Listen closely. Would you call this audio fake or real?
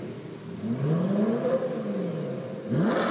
real